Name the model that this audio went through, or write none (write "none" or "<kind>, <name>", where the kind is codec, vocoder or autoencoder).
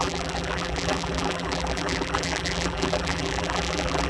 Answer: vocoder, BigVGAN v2